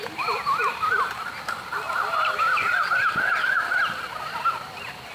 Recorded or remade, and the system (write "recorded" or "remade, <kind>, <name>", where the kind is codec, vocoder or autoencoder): recorded